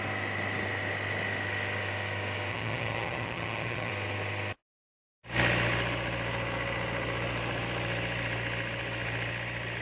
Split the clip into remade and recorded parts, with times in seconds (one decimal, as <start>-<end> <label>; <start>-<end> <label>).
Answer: 0.0-2.5 recorded; 2.5-3.9 remade; 3.9-9.8 recorded